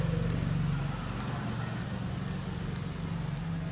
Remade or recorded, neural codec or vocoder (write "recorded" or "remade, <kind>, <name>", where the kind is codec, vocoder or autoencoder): recorded